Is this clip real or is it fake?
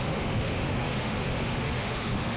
fake